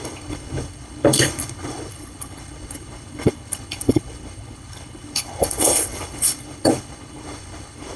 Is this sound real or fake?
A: fake